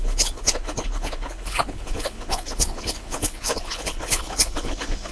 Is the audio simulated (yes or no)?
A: yes